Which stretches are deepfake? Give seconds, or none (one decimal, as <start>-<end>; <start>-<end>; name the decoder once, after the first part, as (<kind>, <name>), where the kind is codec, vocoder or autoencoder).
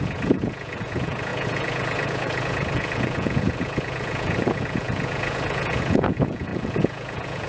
0.0-7.5 (vocoder, Vocos)